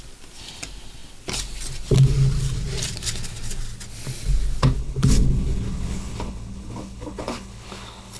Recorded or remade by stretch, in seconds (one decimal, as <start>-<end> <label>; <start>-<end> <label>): 0.0-4.8 recorded; 4.8-8.2 remade